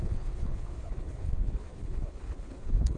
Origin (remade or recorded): remade